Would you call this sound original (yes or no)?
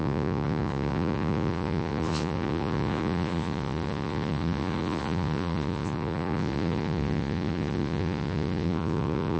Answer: no